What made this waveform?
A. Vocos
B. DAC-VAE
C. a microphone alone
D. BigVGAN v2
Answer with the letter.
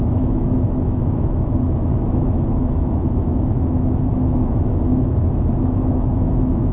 B